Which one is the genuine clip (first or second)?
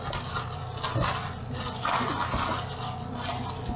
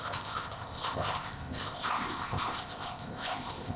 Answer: first